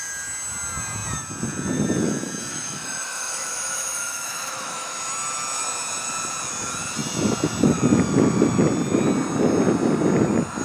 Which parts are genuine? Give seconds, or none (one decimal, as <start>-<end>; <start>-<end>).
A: 0.0-2.5; 5.0-10.6